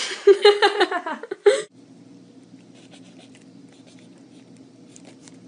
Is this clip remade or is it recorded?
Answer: recorded